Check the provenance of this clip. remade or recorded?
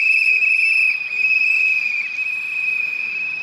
remade